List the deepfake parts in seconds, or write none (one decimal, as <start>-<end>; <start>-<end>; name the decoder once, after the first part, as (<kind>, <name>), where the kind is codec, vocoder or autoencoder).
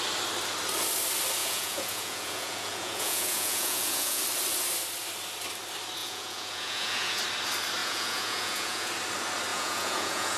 1.4-4.2 (vocoder, Vocos); 6.0-7.2; 7.8-8.9; 9.5-10.4